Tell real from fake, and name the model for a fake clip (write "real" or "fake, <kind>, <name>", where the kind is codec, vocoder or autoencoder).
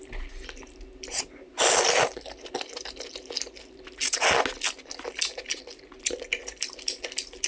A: real